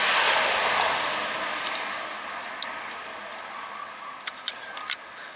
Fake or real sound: real